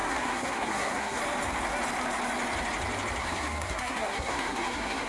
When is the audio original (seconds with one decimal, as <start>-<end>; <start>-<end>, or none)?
1.2-3.2